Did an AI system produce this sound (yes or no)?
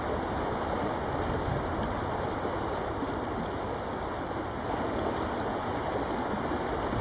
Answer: no